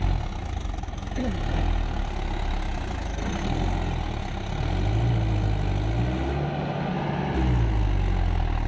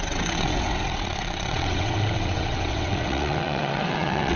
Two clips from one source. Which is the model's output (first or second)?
second